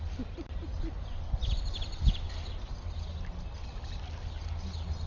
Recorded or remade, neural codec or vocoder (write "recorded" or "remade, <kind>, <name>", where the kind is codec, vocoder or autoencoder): recorded